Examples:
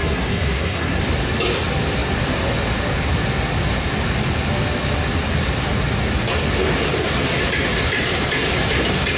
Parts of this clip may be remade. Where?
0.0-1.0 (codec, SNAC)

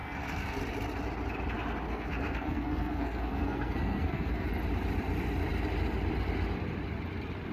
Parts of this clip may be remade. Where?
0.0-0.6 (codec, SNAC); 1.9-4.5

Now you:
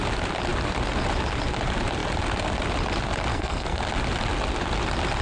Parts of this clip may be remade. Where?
3.3-3.8 (codec, SNAC)

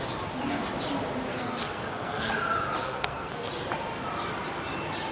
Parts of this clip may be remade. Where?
1.3-2.3 (codec, SNAC); 2.8-3.5